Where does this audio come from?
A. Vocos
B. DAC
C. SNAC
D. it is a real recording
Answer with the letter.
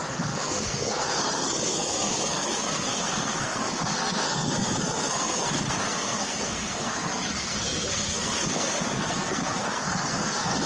C